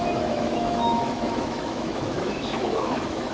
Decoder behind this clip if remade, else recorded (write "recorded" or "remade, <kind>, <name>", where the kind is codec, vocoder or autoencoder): remade, autoencoder, DAC-VAE